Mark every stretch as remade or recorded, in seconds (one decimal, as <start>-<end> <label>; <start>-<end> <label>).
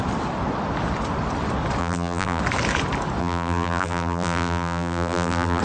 0.0-1.8 recorded; 1.8-2.4 remade; 2.4-3.2 recorded; 3.2-5.6 remade